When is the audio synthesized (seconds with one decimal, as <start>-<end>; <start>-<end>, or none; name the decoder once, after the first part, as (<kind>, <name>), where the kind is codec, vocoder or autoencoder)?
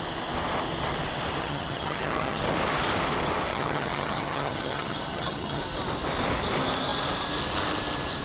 1.4-2.4 (vocoder, HiFi-GAN); 3.5-5.6